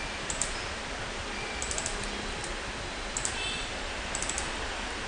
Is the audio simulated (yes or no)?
no